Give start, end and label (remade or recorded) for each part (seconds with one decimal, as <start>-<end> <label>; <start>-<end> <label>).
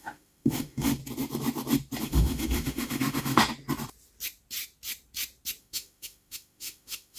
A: 0.0-1.0 remade; 1.0-2.0 recorded; 2.0-3.4 remade; 3.4-5.6 recorded; 5.6-7.2 remade